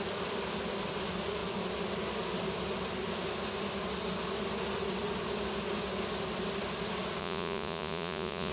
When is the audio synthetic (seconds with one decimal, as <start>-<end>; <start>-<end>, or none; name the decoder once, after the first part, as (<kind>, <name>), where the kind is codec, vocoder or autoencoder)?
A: 7.2-8.5 (vocoder, Vocos)